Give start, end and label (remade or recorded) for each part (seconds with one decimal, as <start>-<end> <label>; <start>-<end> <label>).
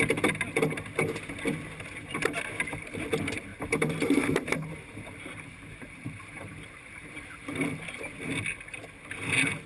0.0-3.5 recorded; 3.5-8.0 remade; 8.0-9.7 recorded